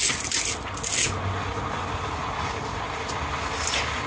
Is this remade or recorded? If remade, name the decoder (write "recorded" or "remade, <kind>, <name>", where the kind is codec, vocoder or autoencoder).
recorded